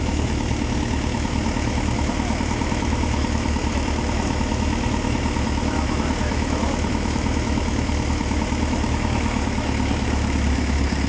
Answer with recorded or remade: remade